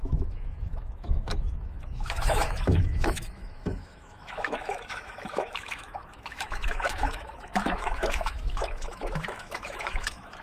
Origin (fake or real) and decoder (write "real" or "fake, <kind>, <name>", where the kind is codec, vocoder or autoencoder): fake, autoencoder, DAC-VAE